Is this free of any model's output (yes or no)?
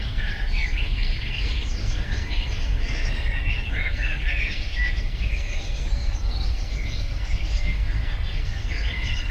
no